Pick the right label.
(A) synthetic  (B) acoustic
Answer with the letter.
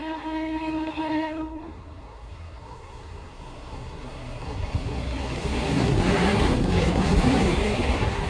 A